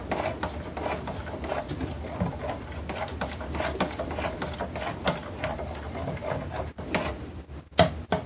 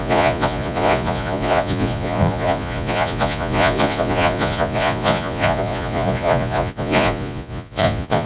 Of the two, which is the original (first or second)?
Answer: first